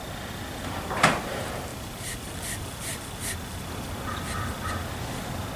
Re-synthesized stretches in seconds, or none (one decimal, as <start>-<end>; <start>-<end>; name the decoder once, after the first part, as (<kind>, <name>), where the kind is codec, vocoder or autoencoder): none